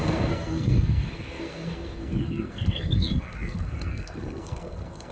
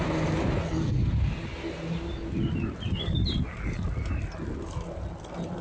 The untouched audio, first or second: second